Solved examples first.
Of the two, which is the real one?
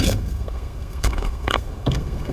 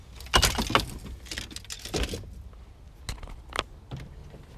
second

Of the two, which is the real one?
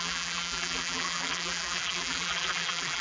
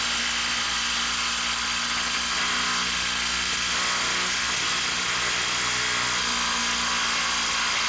second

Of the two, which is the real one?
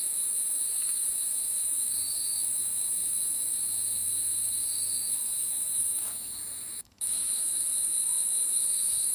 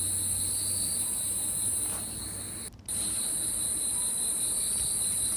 second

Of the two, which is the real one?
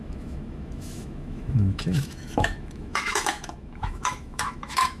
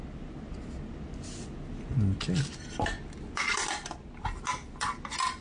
second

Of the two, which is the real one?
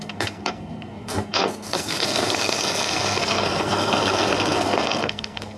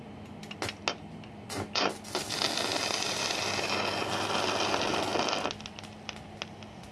second